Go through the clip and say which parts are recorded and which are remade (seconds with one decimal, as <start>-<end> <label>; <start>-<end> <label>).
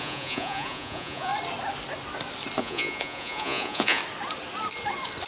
0.0-1.3 remade; 1.3-2.6 recorded; 2.6-4.0 remade; 4.0-5.3 recorded